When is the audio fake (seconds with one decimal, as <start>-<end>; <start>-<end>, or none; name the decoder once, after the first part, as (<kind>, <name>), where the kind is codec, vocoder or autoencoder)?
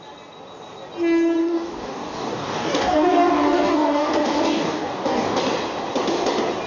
1.4-5.4 (codec, DAC)